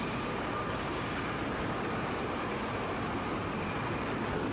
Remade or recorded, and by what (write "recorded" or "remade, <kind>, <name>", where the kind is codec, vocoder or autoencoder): remade, vocoder, BigVGAN v2